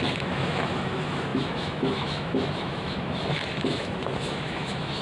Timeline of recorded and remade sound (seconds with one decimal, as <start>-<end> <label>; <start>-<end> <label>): 0.0-5.0 remade